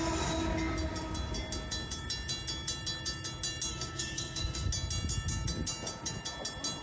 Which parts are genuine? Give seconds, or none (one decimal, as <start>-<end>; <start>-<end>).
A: 0.0-3.7; 4.7-6.8